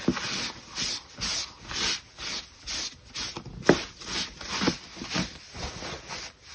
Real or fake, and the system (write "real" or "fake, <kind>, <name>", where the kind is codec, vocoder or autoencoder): real